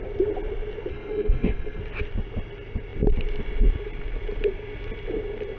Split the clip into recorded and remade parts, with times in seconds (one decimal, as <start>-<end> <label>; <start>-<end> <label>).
0.0-0.9 recorded; 0.9-1.8 remade; 1.8-5.6 recorded